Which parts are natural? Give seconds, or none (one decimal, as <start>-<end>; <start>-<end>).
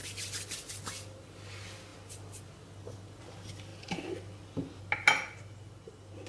0.0-6.3